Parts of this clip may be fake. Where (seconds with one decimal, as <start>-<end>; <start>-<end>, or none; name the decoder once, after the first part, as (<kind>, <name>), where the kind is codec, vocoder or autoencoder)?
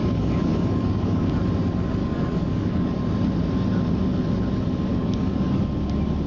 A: 0.0-1.3 (codec, DAC); 2.0-3.0; 4.9-5.6